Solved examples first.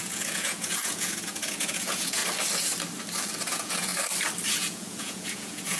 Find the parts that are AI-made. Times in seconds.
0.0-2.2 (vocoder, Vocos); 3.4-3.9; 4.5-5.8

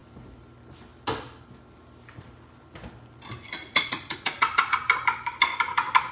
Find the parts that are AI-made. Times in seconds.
3.6-4.8 (vocoder, Vocos)

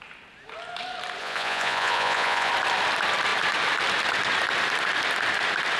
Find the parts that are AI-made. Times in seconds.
1.2-2.5 (vocoder, Vocos)